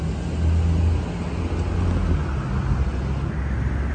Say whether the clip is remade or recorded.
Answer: recorded